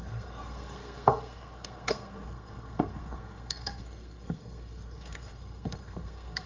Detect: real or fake fake